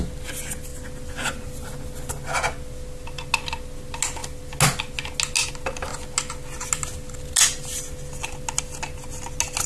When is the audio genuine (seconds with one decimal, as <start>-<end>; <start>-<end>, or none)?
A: 0.0-9.7